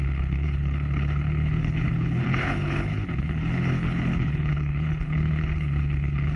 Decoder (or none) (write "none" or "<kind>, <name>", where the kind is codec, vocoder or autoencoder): codec, HILCodec